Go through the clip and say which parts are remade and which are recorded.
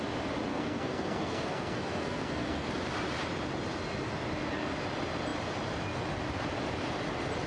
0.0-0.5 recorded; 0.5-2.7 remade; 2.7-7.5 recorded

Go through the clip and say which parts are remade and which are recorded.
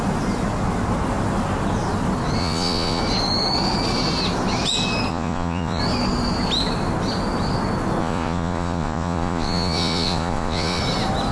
0.0-2.4 recorded; 2.4-3.0 remade; 3.0-5.1 recorded; 5.1-5.8 remade; 5.8-8.0 recorded; 8.0-10.8 remade; 10.8-11.3 recorded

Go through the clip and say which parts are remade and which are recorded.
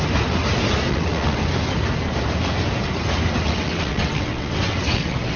0.0-0.9 recorded; 0.9-1.4 remade; 1.4-3.4 recorded; 3.4-5.4 remade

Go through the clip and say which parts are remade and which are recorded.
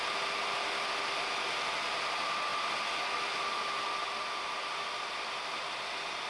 0.0-6.3 recorded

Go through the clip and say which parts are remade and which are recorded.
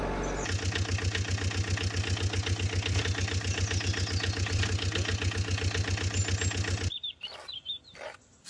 0.0-8.5 recorded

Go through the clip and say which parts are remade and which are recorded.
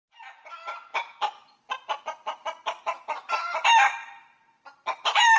0.0-5.4 recorded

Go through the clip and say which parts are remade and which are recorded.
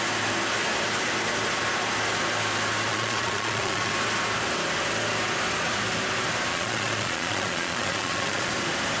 0.0-2.9 recorded; 2.9-3.9 remade; 3.9-6.5 recorded; 6.5-8.5 remade; 8.5-9.0 recorded